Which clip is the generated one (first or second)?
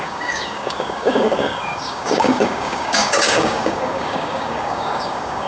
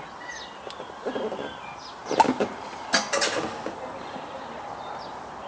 first